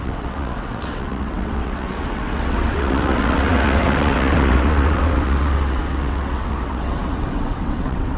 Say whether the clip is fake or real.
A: fake